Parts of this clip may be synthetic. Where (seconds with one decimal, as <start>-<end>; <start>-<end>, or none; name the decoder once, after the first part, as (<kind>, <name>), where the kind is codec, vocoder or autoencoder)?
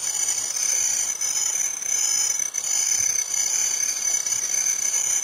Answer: 3.6-4.3 (vocoder, BigVGAN v2)